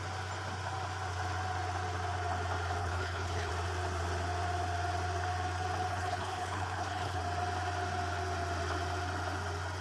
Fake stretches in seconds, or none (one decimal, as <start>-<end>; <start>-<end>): 2.8-3.5; 5.9-7.2